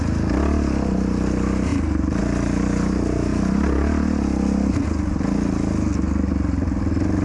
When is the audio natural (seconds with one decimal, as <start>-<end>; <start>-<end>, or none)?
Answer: 0.0-7.2